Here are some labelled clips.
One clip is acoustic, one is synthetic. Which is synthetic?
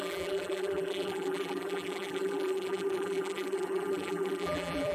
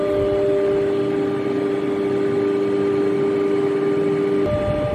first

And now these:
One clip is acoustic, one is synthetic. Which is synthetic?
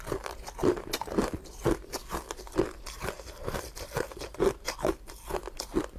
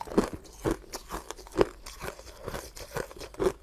first